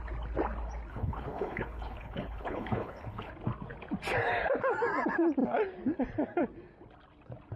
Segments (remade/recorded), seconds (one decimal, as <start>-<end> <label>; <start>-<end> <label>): 0.0-0.9 recorded; 0.9-3.3 remade; 3.3-7.6 recorded